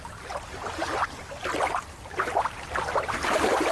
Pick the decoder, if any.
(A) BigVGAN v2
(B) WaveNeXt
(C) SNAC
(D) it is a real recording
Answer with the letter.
D